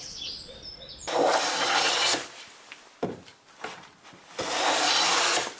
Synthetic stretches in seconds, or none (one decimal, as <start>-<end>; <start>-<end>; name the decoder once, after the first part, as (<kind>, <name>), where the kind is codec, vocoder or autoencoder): none